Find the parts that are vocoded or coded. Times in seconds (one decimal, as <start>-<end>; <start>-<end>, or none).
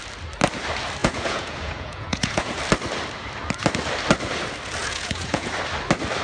1.0-2.6; 4.8-5.5